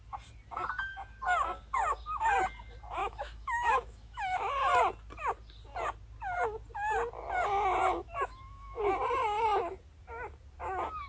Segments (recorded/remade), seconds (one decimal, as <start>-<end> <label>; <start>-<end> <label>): 0.0-3.0 recorded; 3.0-4.5 remade; 4.5-8.0 recorded; 8.0-8.8 remade; 8.8-11.1 recorded